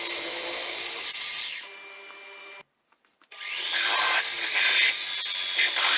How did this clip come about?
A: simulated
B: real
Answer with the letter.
B